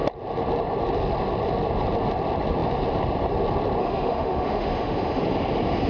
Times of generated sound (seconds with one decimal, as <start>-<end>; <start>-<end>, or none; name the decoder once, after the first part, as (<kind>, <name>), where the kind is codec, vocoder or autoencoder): 3.8-5.2 (autoencoder, DAC-VAE)